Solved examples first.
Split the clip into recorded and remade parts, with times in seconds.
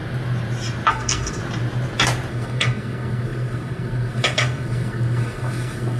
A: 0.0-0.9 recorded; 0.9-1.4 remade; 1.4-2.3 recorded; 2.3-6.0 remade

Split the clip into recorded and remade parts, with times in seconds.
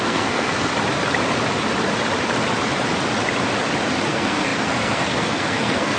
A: 0.0-0.7 remade; 0.7-4.1 recorded; 4.1-6.0 remade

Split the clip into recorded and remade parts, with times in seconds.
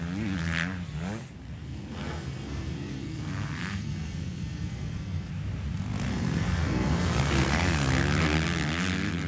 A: 0.0-1.6 recorded; 1.6-5.3 remade; 5.3-6.1 recorded; 6.1-7.9 remade; 7.9-9.3 recorded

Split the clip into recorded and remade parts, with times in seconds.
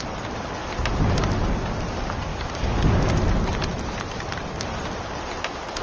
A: 0.0-5.8 recorded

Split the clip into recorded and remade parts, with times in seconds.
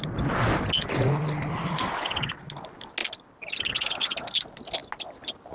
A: 0.0-5.5 recorded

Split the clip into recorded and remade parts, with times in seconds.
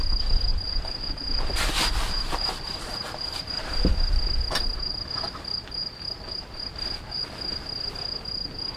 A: 0.0-0.5 recorded; 0.5-3.8 remade; 3.8-8.8 recorded